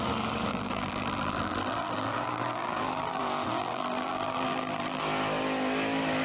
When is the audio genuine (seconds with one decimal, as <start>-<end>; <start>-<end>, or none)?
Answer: 0.0-0.5; 3.2-3.6; 5.0-6.2

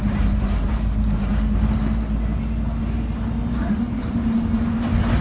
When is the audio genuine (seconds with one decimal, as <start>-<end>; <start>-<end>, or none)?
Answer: 1.3-4.0

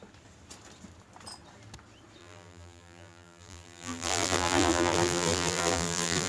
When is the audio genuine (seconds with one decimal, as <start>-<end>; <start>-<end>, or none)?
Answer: 0.0-2.2